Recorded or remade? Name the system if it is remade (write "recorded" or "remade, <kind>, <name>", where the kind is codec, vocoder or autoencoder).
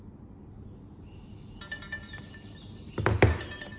recorded